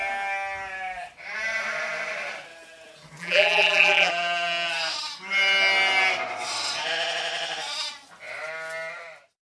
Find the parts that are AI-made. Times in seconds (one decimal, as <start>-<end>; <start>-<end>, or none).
3.2-4.1